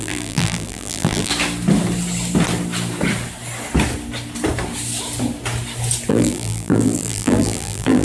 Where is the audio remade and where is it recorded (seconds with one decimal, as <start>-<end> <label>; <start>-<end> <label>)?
0.0-1.3 remade; 1.3-6.1 recorded; 6.1-8.0 remade